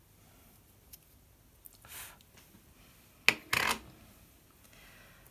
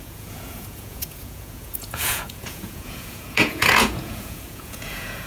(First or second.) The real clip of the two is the first